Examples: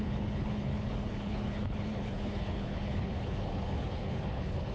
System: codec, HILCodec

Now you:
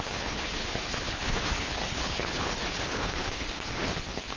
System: codec, HILCodec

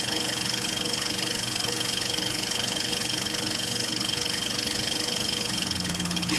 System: codec, HILCodec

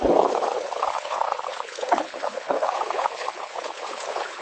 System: codec, HILCodec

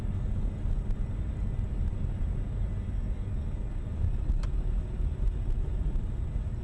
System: none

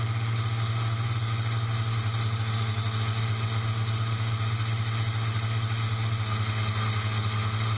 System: none